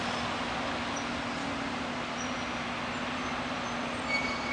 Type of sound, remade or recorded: recorded